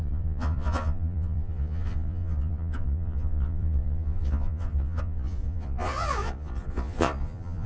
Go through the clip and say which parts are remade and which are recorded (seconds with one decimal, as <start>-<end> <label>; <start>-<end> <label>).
0.0-7.7 remade